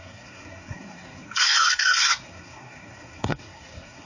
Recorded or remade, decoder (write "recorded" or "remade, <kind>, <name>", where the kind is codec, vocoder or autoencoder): remade, codec, SNAC